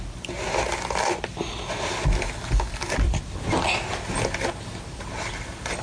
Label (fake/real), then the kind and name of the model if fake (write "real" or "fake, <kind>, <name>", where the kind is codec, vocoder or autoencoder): real